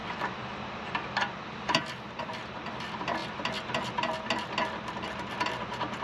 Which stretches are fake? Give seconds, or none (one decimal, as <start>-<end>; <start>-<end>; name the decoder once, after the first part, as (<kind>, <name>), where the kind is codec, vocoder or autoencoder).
none